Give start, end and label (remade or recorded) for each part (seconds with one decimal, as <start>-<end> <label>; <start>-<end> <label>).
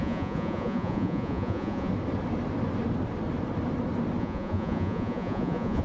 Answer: 0.0-1.9 remade; 1.9-4.2 recorded; 4.2-5.8 remade